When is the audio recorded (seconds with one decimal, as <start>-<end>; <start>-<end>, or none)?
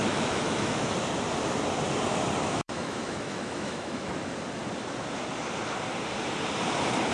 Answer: 0.9-2.4; 4.1-7.1